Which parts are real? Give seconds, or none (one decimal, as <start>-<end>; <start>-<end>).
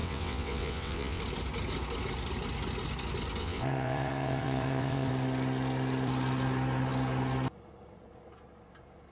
1.2-3.4; 5.1-9.1